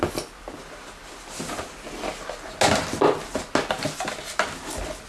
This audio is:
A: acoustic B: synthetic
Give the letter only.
A